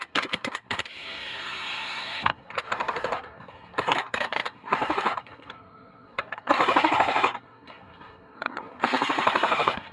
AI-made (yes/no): yes